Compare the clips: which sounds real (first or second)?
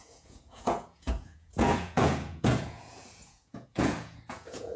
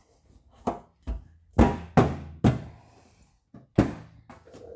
second